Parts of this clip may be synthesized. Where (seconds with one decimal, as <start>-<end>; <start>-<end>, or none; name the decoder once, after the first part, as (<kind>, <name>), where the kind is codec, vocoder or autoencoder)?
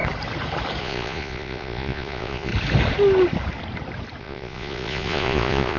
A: 0.8-2.5 (vocoder, Vocos); 4.2-5.8